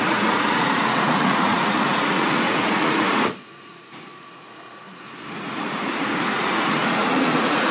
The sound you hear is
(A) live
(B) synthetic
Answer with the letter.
B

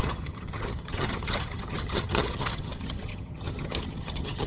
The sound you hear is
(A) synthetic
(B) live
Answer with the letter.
A